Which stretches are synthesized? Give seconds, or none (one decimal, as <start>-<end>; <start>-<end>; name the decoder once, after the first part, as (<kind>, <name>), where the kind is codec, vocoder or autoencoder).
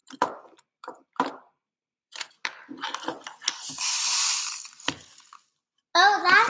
0.0-2.3 (vocoder, BigVGAN v2)